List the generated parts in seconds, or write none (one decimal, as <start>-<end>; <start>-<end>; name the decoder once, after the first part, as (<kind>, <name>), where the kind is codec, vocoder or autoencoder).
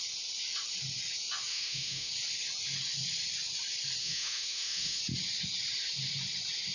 1.5-2.1 (autoencoder, DAC-VAE); 4.0-5.0